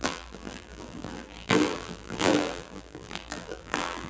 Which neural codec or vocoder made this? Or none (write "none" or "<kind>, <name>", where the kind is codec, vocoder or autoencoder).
vocoder, BigVGAN v2